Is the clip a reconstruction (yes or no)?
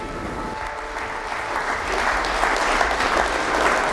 no